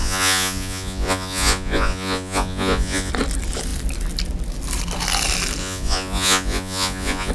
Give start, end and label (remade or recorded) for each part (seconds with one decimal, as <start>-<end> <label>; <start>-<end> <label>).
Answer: 0.0-3.1 remade; 3.1-5.6 recorded; 5.6-7.3 remade